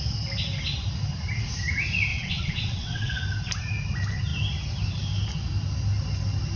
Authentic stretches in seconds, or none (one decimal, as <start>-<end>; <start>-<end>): 0.0-2.1; 3.2-6.6